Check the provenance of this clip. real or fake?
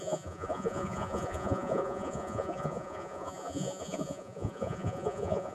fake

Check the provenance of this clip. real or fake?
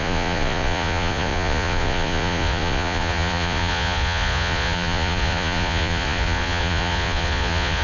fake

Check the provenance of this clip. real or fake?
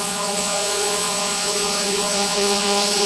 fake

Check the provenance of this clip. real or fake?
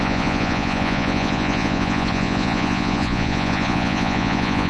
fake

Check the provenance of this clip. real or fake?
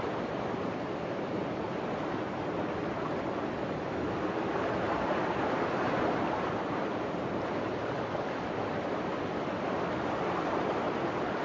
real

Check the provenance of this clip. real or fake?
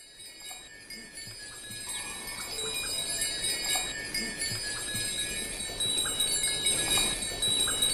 real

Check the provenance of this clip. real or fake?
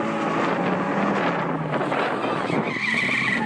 real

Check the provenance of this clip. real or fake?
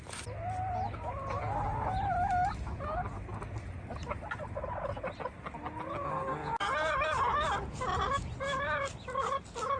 real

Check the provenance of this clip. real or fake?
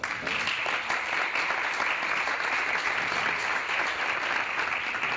real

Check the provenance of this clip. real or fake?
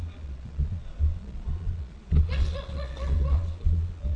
fake